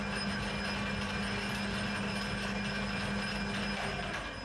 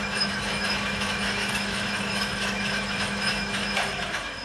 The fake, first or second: second